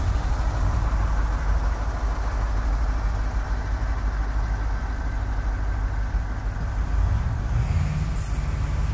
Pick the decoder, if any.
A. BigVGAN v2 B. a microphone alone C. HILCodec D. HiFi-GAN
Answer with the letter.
B